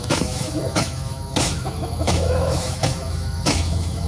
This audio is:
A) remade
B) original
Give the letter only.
A